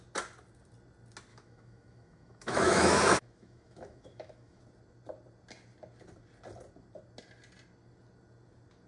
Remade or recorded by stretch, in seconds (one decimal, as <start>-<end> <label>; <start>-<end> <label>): 0.0-1.3 recorded; 1.3-4.6 remade; 4.6-8.9 recorded